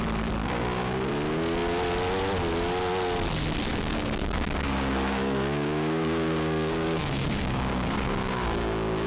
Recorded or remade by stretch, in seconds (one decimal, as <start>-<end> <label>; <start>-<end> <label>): 0.0-0.4 recorded; 0.4-1.1 remade; 1.1-3.7 recorded; 3.7-9.1 remade